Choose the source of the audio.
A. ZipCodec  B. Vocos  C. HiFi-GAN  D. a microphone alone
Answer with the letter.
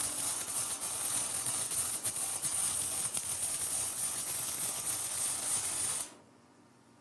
B